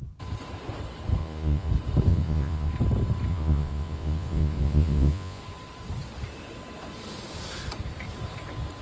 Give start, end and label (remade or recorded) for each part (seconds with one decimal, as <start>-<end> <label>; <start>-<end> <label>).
0.0-1.2 recorded; 1.2-1.7 remade; 1.7-2.1 recorded; 2.1-2.7 remade; 2.7-3.3 recorded; 3.3-5.4 remade; 5.4-8.8 recorded